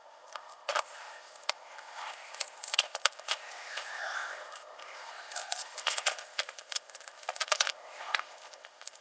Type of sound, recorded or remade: remade